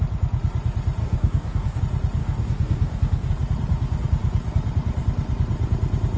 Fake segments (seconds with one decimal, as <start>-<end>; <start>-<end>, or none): 1.0-1.8; 2.2-3.3